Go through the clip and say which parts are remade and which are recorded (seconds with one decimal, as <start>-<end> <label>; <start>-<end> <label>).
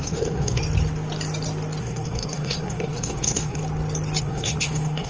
0.0-0.6 remade; 0.6-1.8 recorded; 1.8-3.6 remade; 3.6-4.2 recorded; 4.2-5.1 remade